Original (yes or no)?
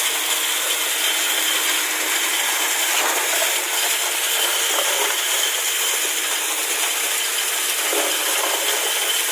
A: yes